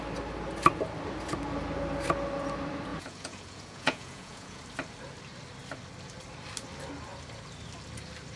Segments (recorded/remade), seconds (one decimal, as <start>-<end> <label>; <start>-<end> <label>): 0.0-2.9 recorded; 2.9-4.6 remade; 4.6-8.4 recorded